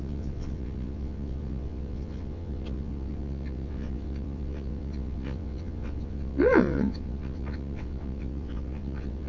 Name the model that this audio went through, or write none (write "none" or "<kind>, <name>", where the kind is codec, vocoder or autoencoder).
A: vocoder, WaveNeXt